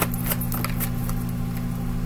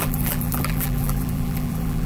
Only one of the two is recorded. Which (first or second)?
first